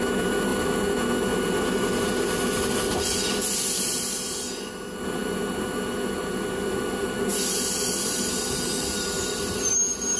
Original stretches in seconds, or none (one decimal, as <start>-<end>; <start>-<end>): 0.0-10.2